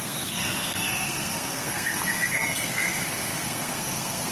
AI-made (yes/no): yes